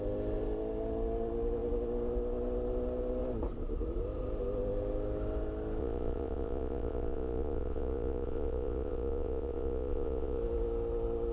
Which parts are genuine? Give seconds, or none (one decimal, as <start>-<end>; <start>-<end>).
0.0-5.8; 10.4-11.3